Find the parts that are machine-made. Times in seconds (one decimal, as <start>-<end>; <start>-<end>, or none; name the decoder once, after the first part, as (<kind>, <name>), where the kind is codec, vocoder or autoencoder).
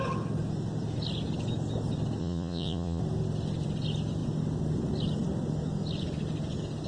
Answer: 2.2-3.0 (vocoder, Vocos)